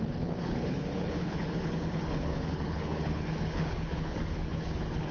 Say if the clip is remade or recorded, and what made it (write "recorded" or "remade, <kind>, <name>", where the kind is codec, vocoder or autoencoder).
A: remade, codec, HILCodec